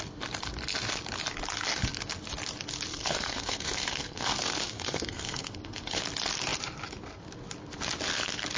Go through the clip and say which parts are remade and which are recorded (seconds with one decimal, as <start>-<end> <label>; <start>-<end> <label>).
0.0-2.9 recorded; 2.9-6.0 remade; 6.0-8.6 recorded

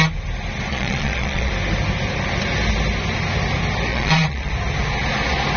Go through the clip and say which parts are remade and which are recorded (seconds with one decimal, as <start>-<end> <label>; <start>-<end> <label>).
0.0-0.7 recorded; 0.7-1.5 remade; 1.5-3.9 recorded; 3.9-4.5 remade; 4.5-5.6 recorded

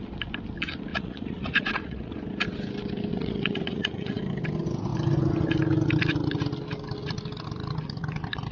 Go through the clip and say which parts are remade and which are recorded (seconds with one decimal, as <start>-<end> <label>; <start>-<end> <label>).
0.0-0.9 recorded; 0.9-2.1 remade; 2.1-3.1 recorded; 3.1-4.2 remade; 4.2-8.5 recorded

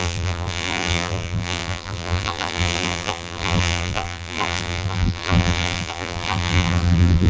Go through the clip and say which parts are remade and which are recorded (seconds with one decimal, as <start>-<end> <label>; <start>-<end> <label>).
0.0-7.3 remade